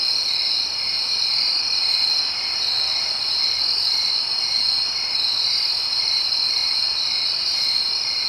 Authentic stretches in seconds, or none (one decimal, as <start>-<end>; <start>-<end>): 0.0-6.6; 7.9-8.3